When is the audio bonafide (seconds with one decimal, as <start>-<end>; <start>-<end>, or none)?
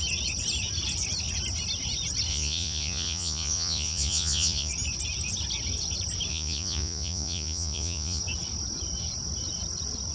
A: 0.0-2.3; 4.7-6.3; 8.2-10.1